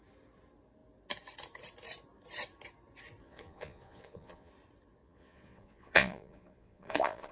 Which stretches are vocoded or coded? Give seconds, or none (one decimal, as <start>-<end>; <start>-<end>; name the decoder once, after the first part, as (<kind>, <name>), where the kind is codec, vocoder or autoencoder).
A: 3.2-4.5 (vocoder, Vocos); 5.0-7.3